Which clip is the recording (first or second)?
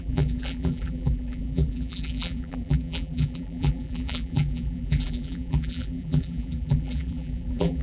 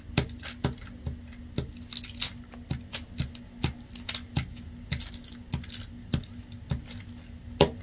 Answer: second